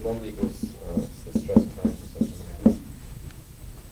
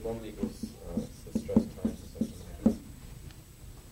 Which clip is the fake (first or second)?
first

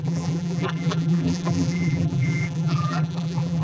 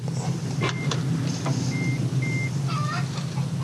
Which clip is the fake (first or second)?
first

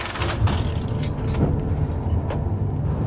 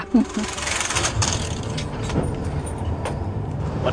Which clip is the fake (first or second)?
second